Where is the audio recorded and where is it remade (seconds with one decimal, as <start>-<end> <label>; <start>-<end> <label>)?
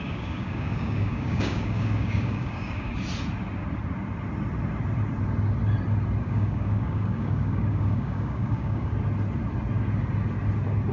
0.0-2.9 remade; 2.9-6.2 recorded; 6.2-8.9 remade; 8.9-10.9 recorded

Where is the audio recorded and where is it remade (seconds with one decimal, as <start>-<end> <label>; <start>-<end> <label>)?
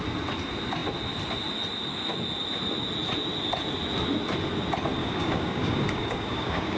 0.0-5.0 recorded; 5.0-6.8 remade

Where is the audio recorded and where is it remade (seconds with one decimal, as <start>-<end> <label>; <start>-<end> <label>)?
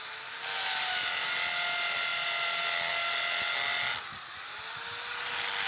0.0-5.7 recorded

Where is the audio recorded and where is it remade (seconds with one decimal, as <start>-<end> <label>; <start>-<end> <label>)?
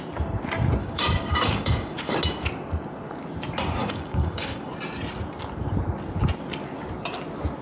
0.0-0.8 recorded; 0.8-2.2 remade; 2.2-3.8 recorded; 3.8-4.7 remade; 4.7-7.6 recorded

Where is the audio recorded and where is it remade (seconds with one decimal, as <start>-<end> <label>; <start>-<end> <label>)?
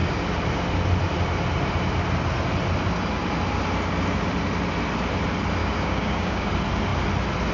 0.0-5.6 recorded; 5.6-6.5 remade; 6.5-7.5 recorded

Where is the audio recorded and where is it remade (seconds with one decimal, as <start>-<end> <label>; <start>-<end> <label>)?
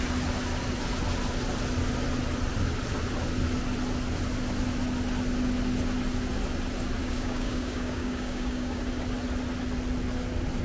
0.0-7.0 recorded; 7.0-8.8 remade; 8.8-10.6 recorded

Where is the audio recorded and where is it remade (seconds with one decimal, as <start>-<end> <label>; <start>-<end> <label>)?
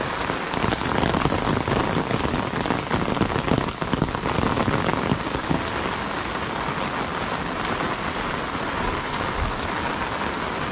0.0-4.8 recorded; 4.8-5.5 remade; 5.5-10.7 recorded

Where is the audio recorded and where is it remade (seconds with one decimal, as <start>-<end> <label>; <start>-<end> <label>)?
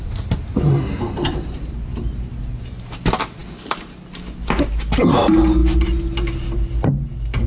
0.0-7.5 recorded